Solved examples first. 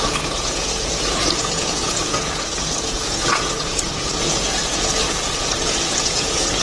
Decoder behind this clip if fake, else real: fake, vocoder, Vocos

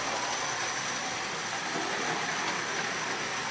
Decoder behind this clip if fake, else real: real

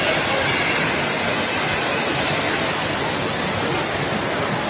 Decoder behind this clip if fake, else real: real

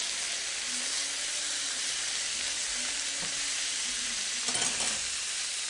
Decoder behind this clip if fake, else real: real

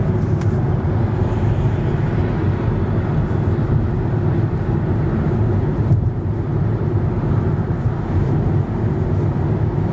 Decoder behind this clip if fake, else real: real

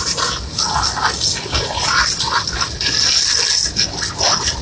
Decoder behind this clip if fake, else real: real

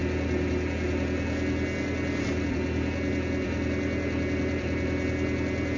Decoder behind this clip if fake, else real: real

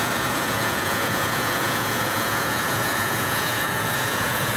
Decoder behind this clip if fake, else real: fake, vocoder, Vocos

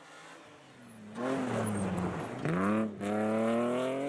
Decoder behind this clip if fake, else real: real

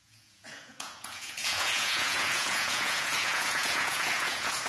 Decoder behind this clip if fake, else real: fake, vocoder, Vocos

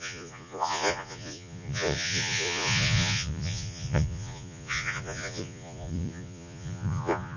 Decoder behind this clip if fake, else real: fake, vocoder, Vocos